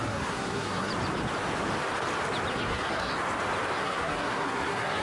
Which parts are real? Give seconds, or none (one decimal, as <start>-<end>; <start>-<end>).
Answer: 0.9-2.5; 3.1-3.8